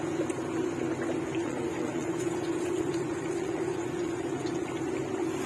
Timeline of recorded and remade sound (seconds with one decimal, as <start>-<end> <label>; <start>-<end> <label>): 0.0-1.4 recorded; 1.4-4.7 remade; 4.7-5.5 recorded